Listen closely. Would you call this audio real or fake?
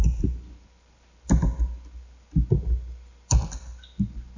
real